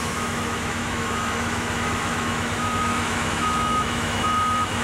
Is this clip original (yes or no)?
no